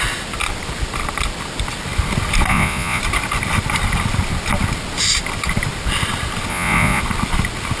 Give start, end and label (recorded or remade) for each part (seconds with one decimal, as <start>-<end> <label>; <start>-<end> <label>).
0.0-2.5 recorded; 2.5-3.0 remade; 3.0-6.5 recorded; 6.5-7.0 remade; 7.0-7.8 recorded